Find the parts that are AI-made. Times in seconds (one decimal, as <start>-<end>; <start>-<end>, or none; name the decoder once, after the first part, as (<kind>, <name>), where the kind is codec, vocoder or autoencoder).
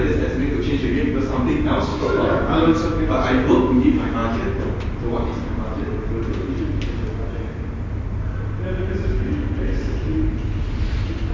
1.9-3.0 (autoencoder, DAC-VAE)